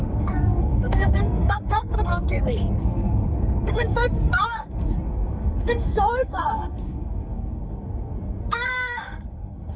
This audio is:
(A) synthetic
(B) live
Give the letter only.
A